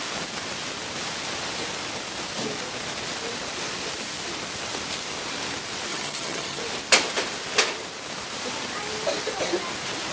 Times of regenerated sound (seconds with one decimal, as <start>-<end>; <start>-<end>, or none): 5.9-6.6